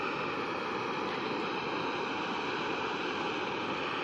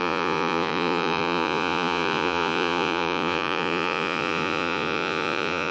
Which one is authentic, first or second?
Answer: first